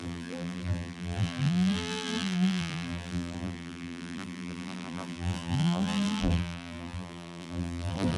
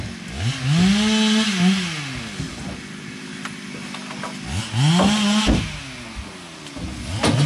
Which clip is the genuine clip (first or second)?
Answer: second